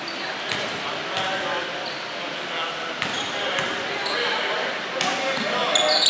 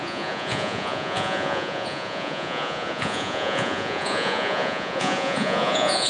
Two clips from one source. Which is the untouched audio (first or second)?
first